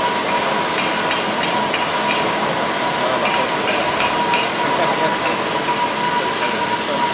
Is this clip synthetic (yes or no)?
no